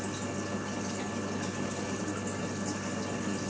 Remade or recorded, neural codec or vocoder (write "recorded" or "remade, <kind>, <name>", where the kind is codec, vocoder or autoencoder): recorded